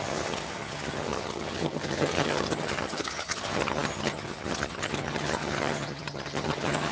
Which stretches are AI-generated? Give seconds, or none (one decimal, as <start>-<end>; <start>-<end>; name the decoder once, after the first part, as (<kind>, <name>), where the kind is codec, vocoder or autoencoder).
0.0-6.9 (vocoder, HiFi-GAN)